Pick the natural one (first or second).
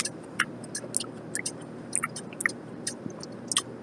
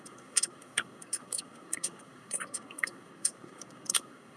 first